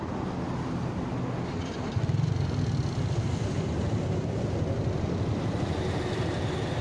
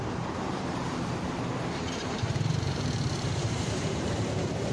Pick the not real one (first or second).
second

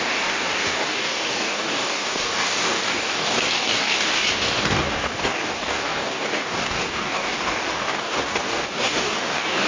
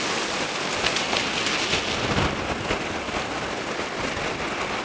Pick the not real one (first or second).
first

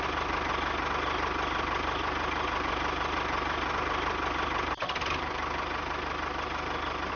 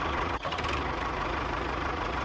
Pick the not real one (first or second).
second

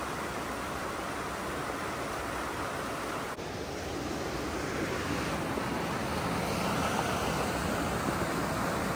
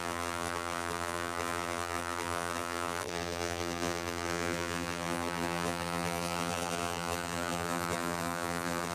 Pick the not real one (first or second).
second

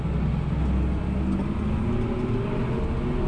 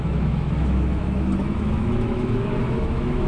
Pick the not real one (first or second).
second